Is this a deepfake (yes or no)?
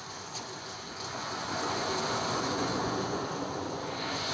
yes